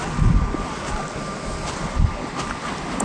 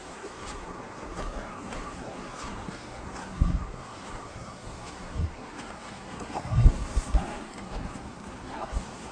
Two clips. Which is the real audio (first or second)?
first